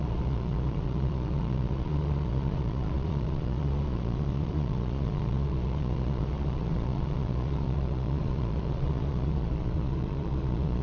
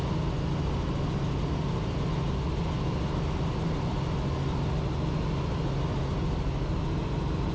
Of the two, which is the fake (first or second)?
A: first